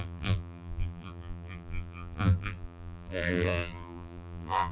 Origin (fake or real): fake